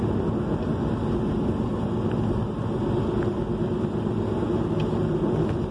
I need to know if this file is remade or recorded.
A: recorded